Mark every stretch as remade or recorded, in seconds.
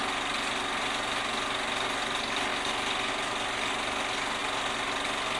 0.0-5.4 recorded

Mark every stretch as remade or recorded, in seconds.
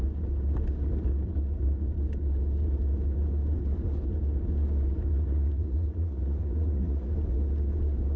0.0-5.1 recorded; 5.1-7.1 remade; 7.1-8.2 recorded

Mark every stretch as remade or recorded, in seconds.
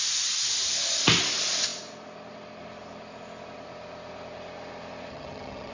0.0-5.1 recorded; 5.1-5.7 remade